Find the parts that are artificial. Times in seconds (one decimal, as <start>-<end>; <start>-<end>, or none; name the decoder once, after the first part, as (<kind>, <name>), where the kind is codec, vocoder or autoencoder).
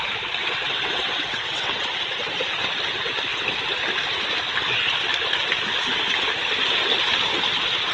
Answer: 0.4-1.9 (vocoder, WaveNeXt)